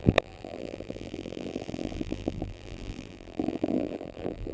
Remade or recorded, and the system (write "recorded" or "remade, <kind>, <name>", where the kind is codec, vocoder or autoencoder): remade, vocoder, BigVGAN v2